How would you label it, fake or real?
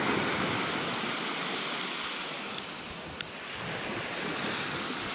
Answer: real